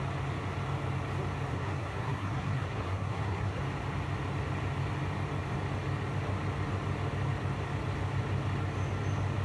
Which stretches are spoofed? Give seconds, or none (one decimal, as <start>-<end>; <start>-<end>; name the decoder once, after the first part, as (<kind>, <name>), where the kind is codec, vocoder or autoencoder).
1.5-3.6 (codec, SNAC)